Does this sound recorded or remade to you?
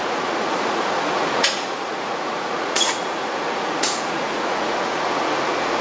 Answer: remade